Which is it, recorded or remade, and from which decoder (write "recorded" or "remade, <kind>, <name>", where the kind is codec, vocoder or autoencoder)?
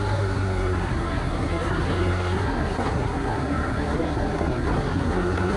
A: remade, codec, SNAC